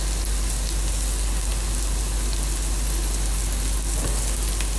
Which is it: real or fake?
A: real